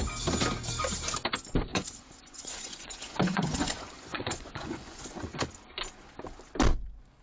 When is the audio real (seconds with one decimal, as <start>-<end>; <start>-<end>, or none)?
0.0-1.7; 5.4-7.2